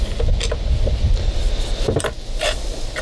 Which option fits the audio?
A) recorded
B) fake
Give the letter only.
A